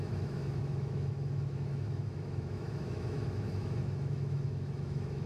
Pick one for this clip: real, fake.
fake